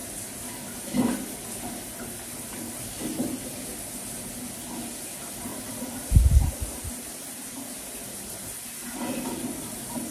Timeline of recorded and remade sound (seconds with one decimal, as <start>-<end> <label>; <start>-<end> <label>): 0.0-5.5 recorded; 5.5-7.8 remade; 7.8-10.1 recorded